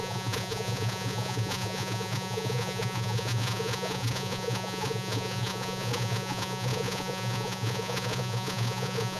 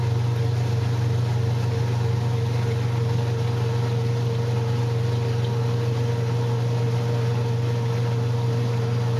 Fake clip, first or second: first